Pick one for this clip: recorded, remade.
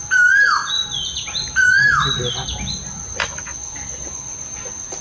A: recorded